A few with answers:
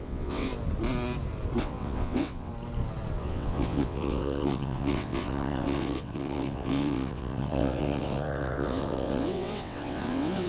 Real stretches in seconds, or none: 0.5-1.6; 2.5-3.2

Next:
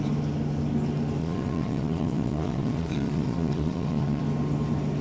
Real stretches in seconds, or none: 0.0-1.2; 4.2-5.0

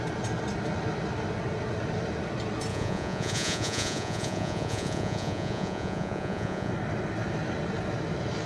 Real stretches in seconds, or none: 0.0-2.7; 6.7-8.5

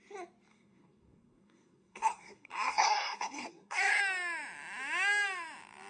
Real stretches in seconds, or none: 0.0-0.5; 4.0-5.9